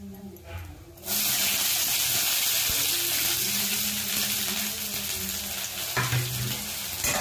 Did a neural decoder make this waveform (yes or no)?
no